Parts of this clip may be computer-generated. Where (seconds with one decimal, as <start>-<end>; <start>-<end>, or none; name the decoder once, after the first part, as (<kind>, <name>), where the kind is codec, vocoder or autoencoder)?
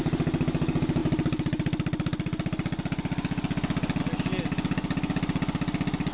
none